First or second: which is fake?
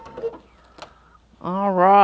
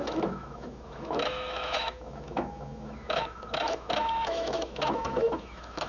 second